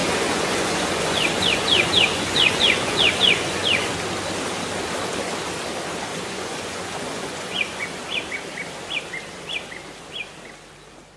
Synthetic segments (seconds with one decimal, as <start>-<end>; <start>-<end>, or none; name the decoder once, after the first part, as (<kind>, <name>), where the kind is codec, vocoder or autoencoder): 0.0-3.9 (vocoder, Vocos); 6.1-8.0